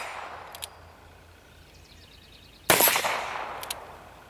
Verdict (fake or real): real